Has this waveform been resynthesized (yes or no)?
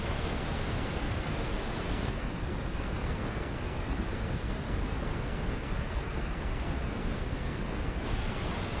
yes